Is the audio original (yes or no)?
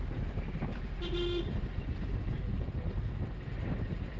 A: no